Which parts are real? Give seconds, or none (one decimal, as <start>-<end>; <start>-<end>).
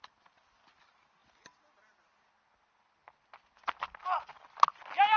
0.0-5.2